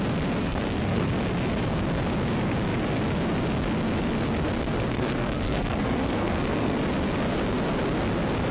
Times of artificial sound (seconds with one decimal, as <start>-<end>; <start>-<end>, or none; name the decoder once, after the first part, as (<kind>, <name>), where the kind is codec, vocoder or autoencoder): 0.4-1.1 (codec, SNAC); 4.9-6.8